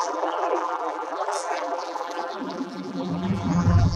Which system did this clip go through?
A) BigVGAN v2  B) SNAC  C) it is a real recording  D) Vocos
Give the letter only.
A